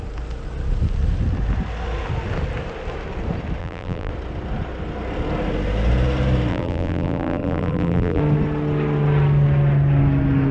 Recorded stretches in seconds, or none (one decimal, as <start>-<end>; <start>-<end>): 0.0-3.6; 4.1-6.5; 8.2-10.5